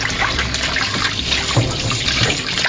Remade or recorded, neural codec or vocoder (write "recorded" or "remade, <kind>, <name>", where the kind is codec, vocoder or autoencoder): recorded